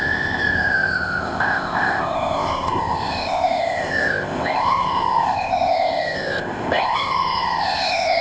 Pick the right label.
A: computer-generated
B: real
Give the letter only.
A